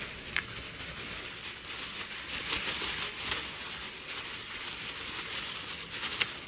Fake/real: real